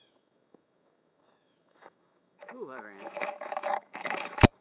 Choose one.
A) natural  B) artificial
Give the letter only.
B